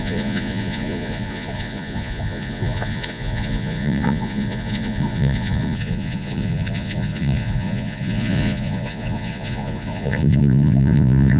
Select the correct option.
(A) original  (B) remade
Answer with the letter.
B